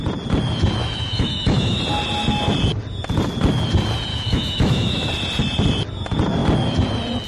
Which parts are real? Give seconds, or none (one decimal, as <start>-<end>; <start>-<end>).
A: 0.0-0.8; 1.8-4.1; 5.1-7.3